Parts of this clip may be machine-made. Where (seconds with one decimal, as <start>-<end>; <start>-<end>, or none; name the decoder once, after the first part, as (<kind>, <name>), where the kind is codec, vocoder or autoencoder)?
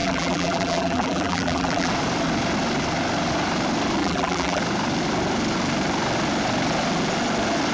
0.0-1.9 (vocoder, BigVGAN v2); 4.0-4.6